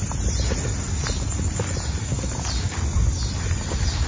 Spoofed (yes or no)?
no